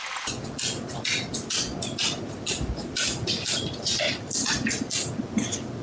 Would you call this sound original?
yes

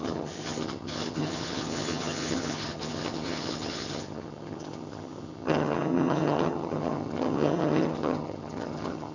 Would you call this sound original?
no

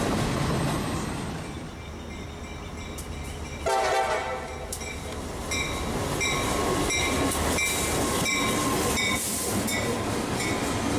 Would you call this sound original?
yes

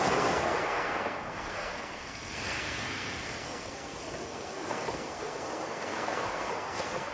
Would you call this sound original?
no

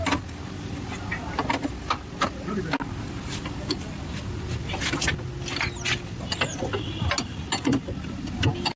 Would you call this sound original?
yes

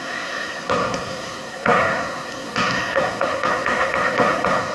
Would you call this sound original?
no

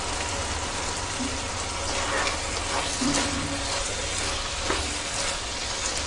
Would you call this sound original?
yes